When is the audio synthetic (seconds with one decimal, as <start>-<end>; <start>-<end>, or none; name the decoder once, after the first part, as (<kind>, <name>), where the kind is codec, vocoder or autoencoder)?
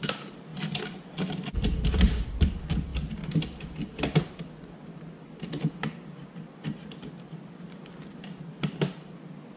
none